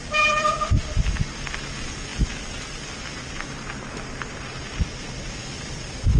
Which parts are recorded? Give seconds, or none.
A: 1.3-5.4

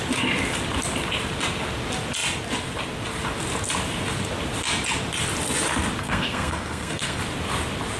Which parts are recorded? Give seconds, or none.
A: 0.0-6.0; 7.2-8.0